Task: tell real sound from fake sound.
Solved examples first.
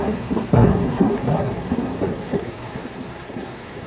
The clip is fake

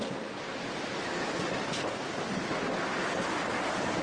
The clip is real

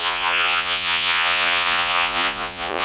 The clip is fake